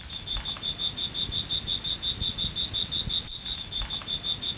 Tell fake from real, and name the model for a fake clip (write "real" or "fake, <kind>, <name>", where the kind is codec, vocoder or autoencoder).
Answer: real